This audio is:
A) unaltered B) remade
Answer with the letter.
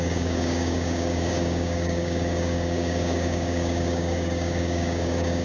B